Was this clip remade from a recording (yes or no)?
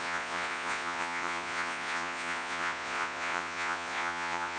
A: yes